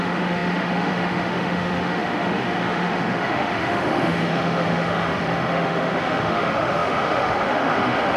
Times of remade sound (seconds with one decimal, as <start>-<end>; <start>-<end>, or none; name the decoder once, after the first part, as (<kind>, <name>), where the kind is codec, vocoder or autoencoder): 0.0-8.2 (autoencoder, DAC-VAE)